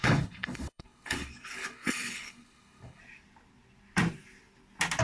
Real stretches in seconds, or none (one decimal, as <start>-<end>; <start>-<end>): 3.0-5.0